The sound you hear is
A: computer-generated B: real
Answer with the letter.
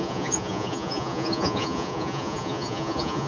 A